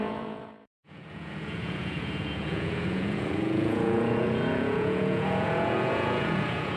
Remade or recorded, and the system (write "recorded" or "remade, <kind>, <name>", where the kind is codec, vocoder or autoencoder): remade, vocoder, Vocos